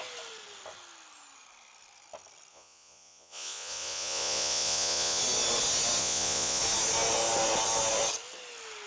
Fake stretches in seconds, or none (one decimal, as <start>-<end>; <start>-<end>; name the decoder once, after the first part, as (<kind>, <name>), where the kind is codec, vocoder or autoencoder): 2.5-5.2 (vocoder, Vocos); 6.0-6.6